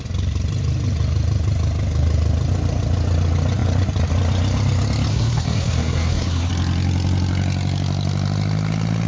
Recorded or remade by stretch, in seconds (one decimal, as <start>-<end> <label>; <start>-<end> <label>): 0.0-5.1 recorded; 5.1-6.5 remade; 6.5-9.1 recorded